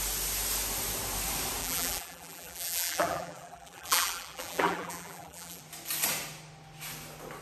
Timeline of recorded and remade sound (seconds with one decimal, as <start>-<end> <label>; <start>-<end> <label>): 0.0-1.6 recorded; 1.6-5.6 remade; 5.6-7.4 recorded